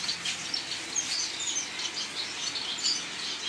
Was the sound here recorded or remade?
recorded